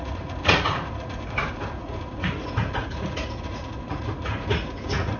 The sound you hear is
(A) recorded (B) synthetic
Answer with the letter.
B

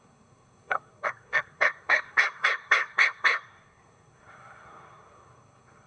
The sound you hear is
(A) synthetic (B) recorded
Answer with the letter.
A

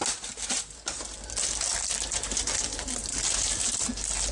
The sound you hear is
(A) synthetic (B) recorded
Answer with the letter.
B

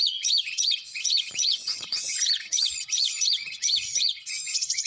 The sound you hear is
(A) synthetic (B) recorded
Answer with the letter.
A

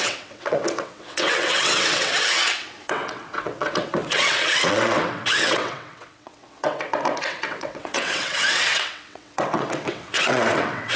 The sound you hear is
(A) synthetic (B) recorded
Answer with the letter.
A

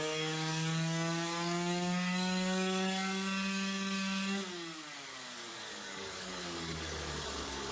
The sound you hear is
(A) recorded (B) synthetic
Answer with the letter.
B